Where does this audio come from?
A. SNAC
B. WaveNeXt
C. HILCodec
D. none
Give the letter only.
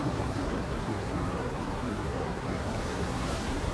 A